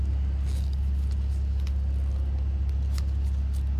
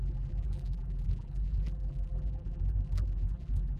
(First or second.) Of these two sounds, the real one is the first